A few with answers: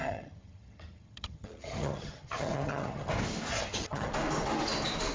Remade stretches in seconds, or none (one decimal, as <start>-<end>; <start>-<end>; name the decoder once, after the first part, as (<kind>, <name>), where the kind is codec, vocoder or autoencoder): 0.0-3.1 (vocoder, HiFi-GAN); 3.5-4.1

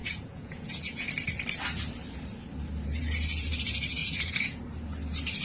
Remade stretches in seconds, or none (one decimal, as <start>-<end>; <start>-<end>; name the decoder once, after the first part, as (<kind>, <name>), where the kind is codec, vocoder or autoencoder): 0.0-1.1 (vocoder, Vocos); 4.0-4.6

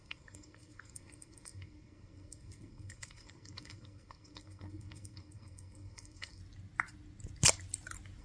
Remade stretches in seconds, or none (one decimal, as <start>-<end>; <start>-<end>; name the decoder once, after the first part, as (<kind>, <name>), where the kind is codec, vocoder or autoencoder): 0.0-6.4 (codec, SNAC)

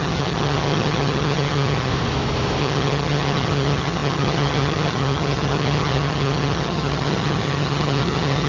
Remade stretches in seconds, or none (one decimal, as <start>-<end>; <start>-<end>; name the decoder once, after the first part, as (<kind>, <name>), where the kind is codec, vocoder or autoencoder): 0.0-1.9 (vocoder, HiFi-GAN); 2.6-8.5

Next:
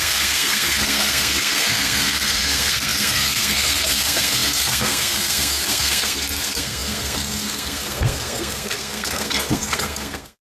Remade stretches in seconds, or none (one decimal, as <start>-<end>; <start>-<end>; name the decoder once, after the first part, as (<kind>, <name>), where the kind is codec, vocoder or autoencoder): 0.0-10.5 (codec, SNAC)

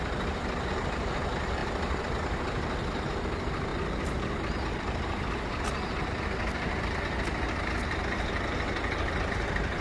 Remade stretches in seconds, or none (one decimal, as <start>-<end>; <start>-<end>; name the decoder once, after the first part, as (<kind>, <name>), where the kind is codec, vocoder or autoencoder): none

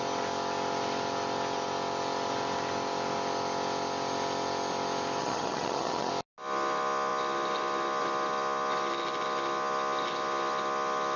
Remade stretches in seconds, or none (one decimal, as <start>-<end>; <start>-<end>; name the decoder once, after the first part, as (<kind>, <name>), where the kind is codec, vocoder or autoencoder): 5.2-6.1 (vocoder, HiFi-GAN)